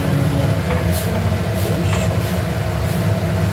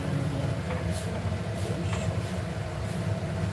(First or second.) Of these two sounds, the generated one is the second